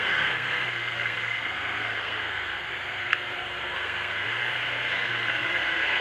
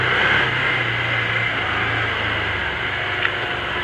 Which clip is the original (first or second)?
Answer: second